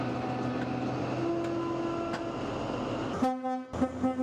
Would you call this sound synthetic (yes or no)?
no